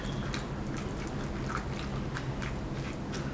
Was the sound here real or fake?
real